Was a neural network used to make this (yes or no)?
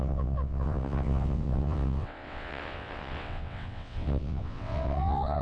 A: yes